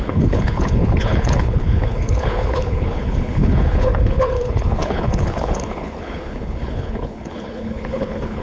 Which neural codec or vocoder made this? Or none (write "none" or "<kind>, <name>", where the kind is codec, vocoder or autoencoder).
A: codec, HILCodec